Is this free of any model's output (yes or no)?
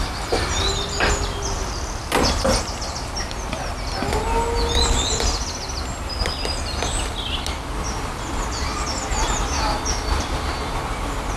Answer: yes